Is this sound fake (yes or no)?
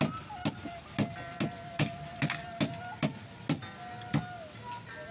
no